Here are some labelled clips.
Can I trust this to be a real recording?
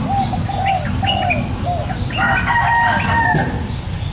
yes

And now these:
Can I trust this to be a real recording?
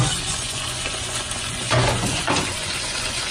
no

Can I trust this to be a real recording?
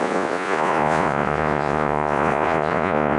no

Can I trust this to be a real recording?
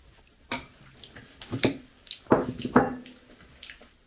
yes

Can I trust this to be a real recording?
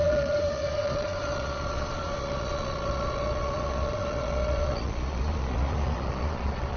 no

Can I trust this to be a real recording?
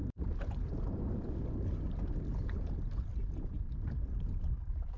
yes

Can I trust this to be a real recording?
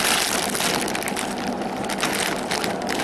yes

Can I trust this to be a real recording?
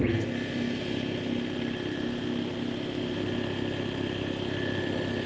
yes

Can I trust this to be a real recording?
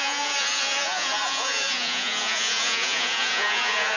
no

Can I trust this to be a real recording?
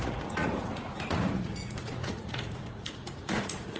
no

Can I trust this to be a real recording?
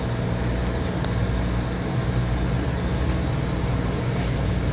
yes